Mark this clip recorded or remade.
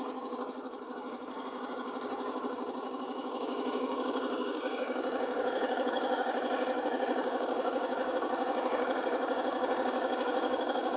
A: remade